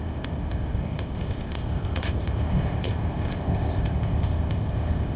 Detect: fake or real fake